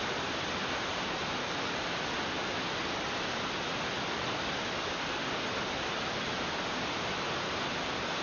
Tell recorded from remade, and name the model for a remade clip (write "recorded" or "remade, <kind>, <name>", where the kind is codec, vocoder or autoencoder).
recorded